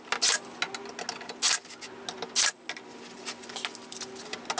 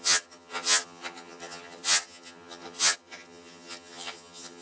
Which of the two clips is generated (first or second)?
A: second